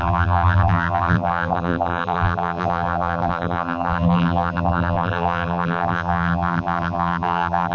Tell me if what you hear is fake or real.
fake